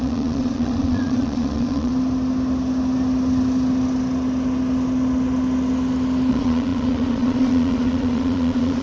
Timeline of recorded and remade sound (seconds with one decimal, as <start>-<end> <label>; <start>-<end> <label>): 0.0-1.9 remade; 1.9-6.3 recorded; 6.3-8.8 remade